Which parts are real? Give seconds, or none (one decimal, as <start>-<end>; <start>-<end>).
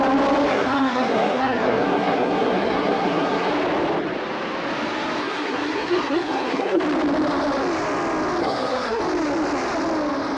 0.0-0.5; 3.5-5.2; 6.8-8.4; 9.0-10.4